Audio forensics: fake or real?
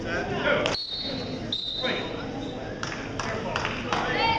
real